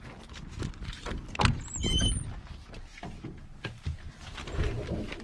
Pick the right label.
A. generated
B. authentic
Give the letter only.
B